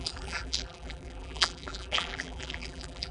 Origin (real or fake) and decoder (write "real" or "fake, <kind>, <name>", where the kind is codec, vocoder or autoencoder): fake, vocoder, BigVGAN v2